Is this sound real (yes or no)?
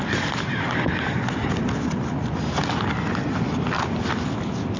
yes